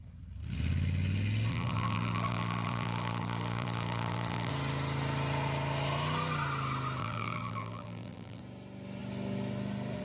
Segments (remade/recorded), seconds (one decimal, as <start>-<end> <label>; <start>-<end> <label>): 0.0-1.5 recorded; 1.5-4.5 remade; 4.5-7.0 recorded; 7.0-8.4 remade; 8.4-10.0 recorded